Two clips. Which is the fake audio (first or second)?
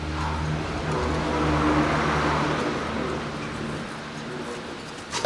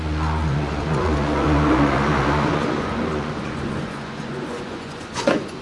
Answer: second